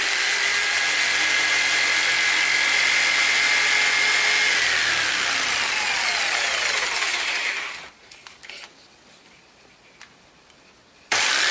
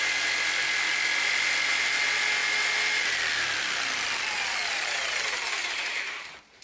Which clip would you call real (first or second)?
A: first